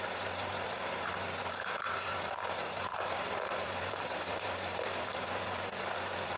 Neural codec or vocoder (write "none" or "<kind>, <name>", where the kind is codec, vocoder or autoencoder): none